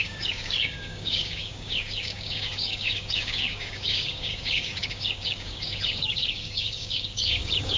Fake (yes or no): yes